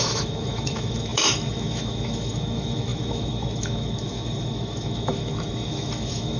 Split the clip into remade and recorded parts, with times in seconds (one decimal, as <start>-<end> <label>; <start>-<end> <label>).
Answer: 0.0-6.4 remade